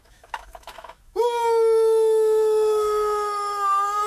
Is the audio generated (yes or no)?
yes